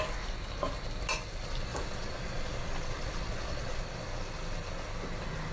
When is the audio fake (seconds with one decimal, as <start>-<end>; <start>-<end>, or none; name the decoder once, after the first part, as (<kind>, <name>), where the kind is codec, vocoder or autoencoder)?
1.7-3.8 (vocoder, Vocos)